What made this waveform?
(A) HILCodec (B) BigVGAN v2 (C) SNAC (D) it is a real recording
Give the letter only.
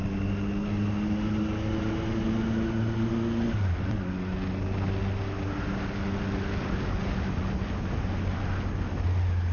D